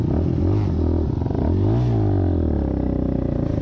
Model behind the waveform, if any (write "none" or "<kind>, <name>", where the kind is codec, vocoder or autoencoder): none